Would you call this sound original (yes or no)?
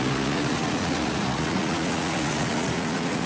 no